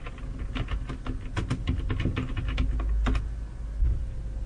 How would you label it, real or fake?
real